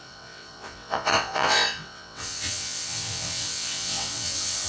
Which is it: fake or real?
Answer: fake